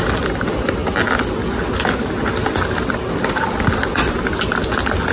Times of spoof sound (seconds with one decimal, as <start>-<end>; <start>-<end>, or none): none